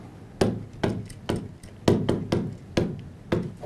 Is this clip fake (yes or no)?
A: no